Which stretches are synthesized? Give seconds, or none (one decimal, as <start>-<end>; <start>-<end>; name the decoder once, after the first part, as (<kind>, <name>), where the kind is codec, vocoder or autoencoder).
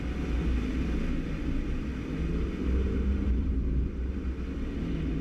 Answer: none